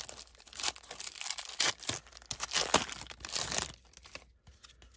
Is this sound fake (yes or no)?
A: no